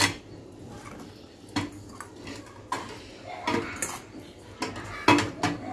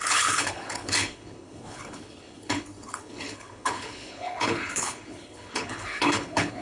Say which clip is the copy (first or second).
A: second